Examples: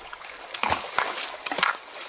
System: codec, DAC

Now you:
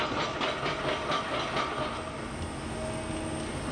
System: none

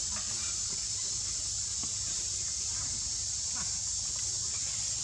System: none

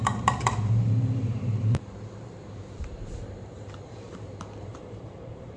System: vocoder, BigVGAN v2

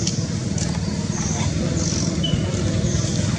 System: none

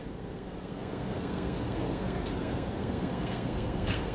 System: codec, SNAC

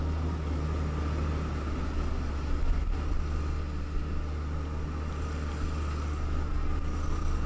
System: none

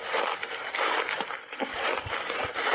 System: none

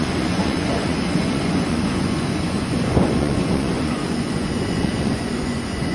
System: vocoder, Vocos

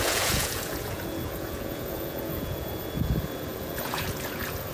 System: vocoder, Vocos